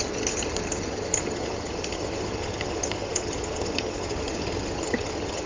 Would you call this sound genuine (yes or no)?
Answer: no